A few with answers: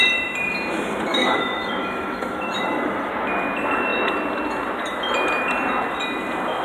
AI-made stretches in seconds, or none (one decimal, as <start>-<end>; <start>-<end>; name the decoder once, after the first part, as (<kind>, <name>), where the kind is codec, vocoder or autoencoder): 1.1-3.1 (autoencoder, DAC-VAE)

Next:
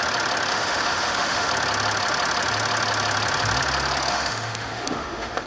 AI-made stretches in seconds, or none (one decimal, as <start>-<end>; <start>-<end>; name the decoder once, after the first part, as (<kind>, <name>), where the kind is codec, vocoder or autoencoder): 0.5-1.5 (autoencoder, DAC-VAE); 4.1-5.5

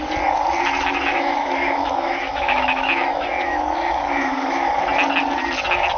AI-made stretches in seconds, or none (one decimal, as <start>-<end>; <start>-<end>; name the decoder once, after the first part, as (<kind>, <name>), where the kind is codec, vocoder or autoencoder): 1.1-4.7 (autoencoder, DAC-VAE)

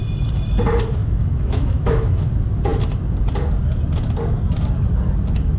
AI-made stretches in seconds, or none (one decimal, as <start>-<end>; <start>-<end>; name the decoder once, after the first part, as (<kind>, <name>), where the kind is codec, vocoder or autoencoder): 1.0-2.3 (autoencoder, DAC-VAE)